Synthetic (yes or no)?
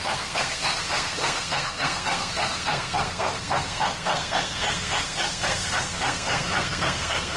yes